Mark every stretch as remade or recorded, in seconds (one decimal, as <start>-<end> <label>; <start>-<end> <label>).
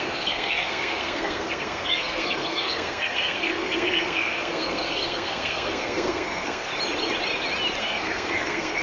0.0-6.7 remade; 6.7-7.8 recorded; 7.8-8.8 remade